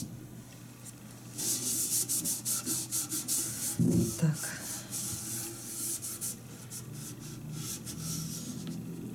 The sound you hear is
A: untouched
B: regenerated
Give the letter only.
A